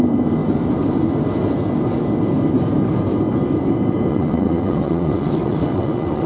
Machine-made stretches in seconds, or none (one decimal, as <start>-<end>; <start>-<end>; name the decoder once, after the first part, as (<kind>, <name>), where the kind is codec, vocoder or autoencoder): 4.1-6.3 (vocoder, WaveNeXt)